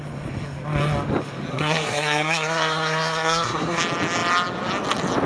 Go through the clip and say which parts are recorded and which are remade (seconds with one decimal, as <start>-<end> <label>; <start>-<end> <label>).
0.0-1.5 recorded; 1.5-3.8 remade; 3.8-5.3 recorded